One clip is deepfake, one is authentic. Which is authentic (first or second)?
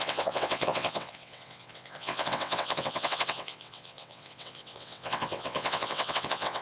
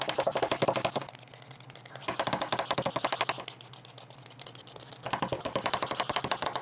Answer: second